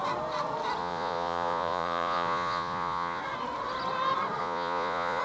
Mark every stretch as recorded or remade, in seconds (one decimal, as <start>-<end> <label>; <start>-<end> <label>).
0.0-0.8 recorded; 0.8-3.2 remade; 3.2-4.4 recorded; 4.4-5.2 remade